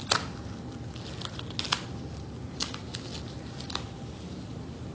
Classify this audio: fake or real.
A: real